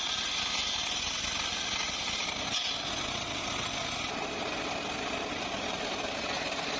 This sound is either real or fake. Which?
real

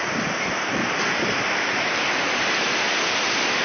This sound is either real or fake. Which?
real